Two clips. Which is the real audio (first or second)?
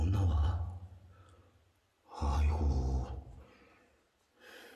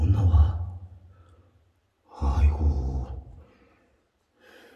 first